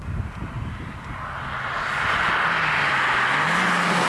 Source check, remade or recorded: recorded